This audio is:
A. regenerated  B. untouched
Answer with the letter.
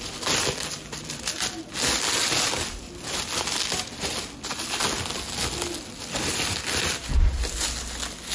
B